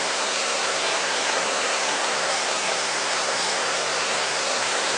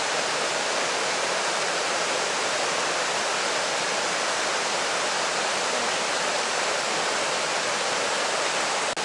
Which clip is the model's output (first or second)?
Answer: first